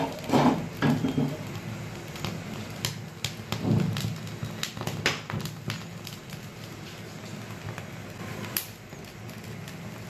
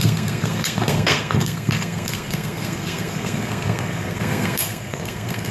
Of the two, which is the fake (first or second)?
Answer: second